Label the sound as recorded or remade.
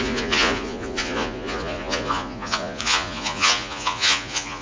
remade